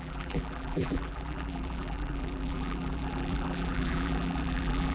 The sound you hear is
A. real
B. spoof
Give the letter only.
B